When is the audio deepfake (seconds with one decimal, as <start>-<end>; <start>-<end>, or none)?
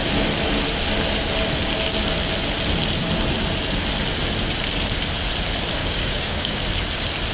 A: 5.8-6.6